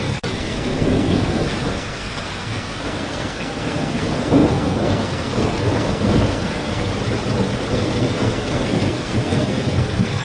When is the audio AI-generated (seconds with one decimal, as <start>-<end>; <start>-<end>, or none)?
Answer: 0.0-6.9; 7.7-10.2